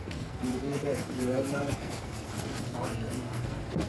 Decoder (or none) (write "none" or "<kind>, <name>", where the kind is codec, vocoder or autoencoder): codec, SNAC